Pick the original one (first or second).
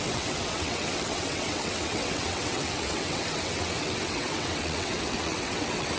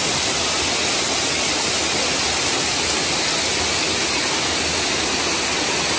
second